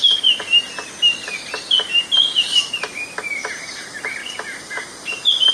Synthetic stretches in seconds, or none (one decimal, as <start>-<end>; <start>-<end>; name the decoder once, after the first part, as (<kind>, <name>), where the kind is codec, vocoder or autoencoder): none